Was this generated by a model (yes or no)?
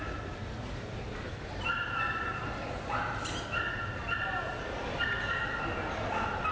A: no